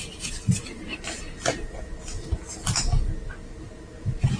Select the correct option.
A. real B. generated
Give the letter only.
A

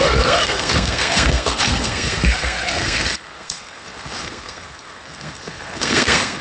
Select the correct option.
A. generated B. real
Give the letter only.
A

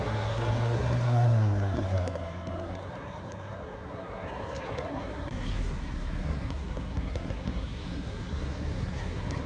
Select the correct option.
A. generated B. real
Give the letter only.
A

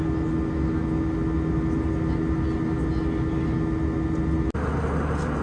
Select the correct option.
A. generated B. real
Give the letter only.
B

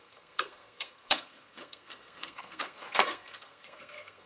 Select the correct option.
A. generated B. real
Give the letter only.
A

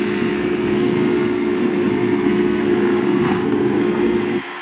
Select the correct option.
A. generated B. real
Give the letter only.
A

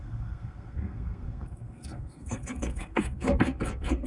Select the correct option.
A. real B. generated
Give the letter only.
B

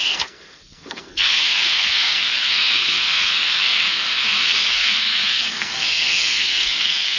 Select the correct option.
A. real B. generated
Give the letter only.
B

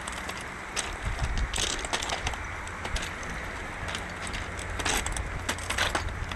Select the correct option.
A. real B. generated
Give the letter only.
A